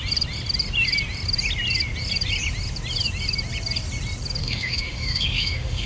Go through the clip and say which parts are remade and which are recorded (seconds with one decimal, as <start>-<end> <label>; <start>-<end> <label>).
0.0-4.4 recorded; 4.4-5.9 remade